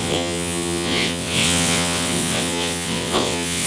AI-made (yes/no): yes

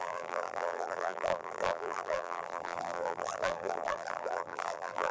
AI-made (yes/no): yes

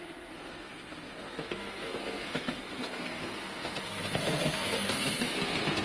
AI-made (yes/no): yes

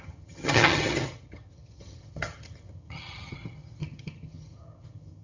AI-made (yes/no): yes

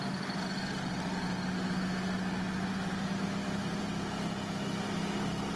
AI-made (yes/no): no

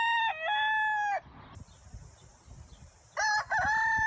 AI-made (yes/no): no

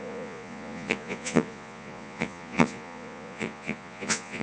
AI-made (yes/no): yes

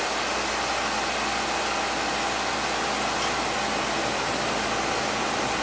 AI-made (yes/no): no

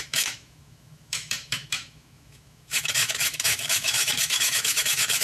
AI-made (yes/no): yes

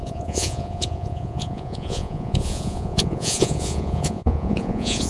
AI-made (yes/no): yes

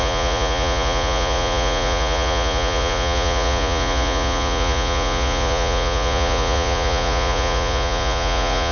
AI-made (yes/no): yes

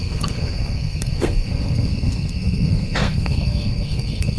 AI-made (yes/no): yes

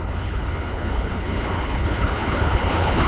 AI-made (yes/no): yes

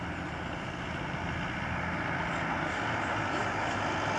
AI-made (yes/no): no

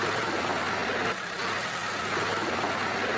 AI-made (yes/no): no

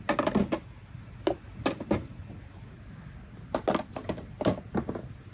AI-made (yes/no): no